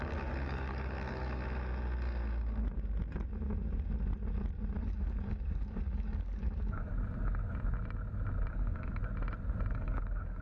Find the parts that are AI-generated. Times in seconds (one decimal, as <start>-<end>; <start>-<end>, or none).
0.0-1.4; 4.8-6.9; 8.5-9.0; 9.7-10.4

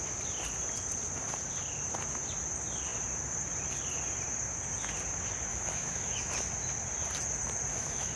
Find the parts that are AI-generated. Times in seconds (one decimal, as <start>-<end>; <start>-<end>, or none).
5.5-6.3; 7.7-8.2

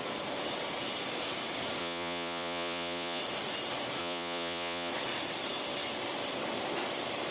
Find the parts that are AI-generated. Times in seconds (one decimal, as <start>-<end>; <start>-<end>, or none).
1.8-3.2; 4.0-4.9

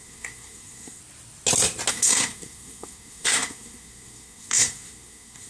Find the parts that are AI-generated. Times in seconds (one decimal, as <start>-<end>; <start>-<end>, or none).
0.0-1.0; 1.9-5.5

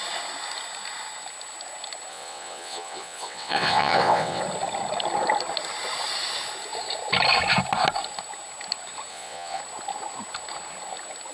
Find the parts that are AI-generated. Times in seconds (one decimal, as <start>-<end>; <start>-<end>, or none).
2.1-4.4; 9.1-9.6

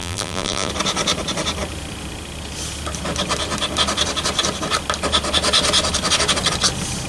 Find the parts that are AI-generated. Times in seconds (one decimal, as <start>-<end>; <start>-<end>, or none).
0.0-0.7